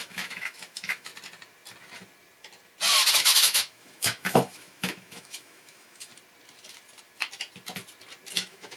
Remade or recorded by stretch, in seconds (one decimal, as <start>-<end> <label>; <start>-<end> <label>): 0.0-1.1 remade; 1.1-3.1 recorded; 3.1-6.1 remade; 6.1-8.3 recorded; 8.3-8.8 remade